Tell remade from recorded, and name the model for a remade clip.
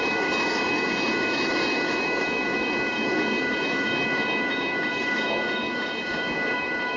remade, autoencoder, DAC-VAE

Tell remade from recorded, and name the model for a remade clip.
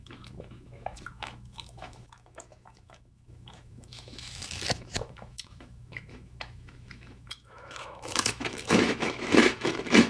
remade, autoencoder, DAC-VAE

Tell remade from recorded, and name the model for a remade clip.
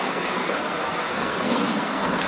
remade, codec, SNAC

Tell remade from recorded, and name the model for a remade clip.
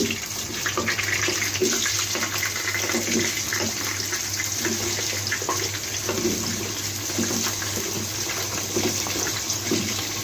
recorded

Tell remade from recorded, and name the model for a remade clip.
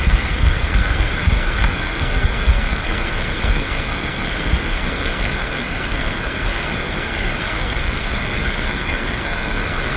remade, codec, SNAC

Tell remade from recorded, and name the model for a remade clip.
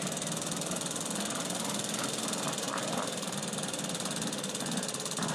recorded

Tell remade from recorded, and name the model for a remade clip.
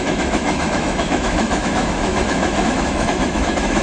remade, autoencoder, DAC-VAE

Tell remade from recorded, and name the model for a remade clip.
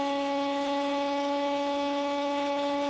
remade, codec, HILCodec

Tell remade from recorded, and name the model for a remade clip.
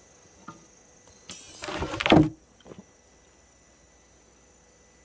recorded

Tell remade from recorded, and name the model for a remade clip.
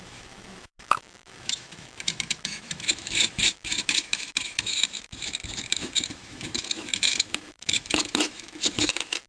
remade, autoencoder, DAC-VAE